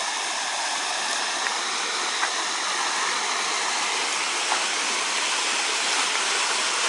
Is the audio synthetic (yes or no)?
no